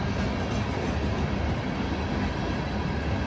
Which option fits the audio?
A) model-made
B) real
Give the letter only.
B